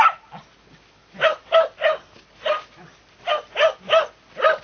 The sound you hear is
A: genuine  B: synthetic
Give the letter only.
A